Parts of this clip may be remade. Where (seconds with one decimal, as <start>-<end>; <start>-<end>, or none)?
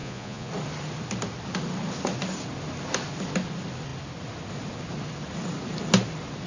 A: 0.0-0.5